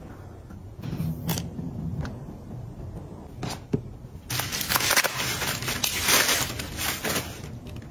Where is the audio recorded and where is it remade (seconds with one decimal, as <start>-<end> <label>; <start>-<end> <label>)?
0.0-1.3 recorded; 1.3-2.5 remade; 2.5-7.9 recorded